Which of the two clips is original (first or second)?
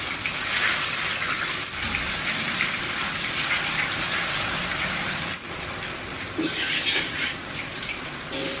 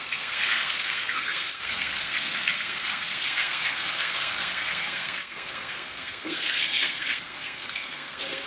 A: first